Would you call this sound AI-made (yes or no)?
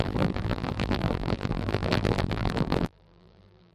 yes